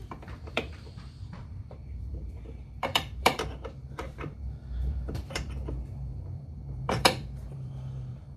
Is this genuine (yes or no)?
no